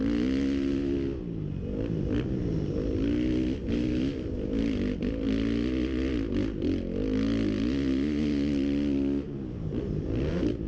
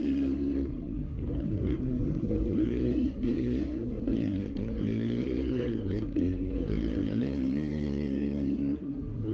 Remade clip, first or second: second